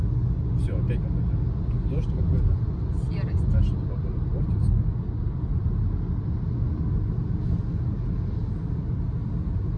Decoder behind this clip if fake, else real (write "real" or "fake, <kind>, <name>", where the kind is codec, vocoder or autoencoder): real